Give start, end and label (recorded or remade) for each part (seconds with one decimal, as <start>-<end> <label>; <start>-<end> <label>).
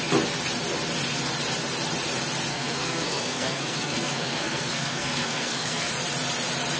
0.0-2.5 recorded; 2.5-5.9 remade; 5.9-6.8 recorded